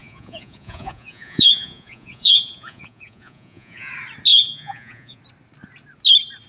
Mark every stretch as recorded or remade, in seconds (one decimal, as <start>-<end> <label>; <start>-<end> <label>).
0.0-3.9 remade; 3.9-4.3 recorded; 4.3-5.2 remade; 5.2-6.5 recorded